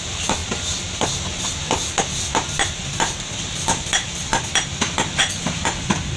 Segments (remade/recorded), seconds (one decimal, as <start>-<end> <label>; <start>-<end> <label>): 0.0-0.4 remade; 0.4-1.5 recorded; 1.5-4.3 remade; 4.3-5.4 recorded; 5.4-6.2 remade

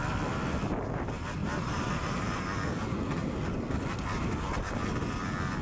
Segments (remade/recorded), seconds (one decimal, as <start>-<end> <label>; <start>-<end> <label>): 0.0-1.4 recorded; 1.4-2.6 remade; 2.6-5.6 recorded

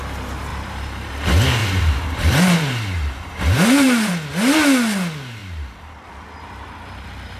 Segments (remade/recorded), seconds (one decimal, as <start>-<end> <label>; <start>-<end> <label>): 0.0-0.5 recorded; 0.5-1.1 remade; 1.1-1.6 recorded; 1.6-4.1 remade; 4.1-7.4 recorded

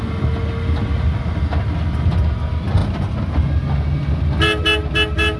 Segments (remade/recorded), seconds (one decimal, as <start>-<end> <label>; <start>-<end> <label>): 0.0-2.8 recorded; 2.8-3.3 remade; 3.3-5.4 recorded

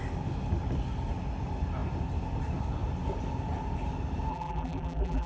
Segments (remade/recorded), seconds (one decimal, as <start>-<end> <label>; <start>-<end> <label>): 0.0-4.3 recorded; 4.3-5.3 remade

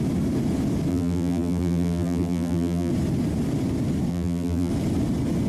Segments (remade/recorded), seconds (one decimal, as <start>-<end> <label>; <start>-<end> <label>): 0.0-0.9 recorded; 0.9-2.9 remade; 2.9-4.1 recorded; 4.1-4.7 remade; 4.7-5.5 recorded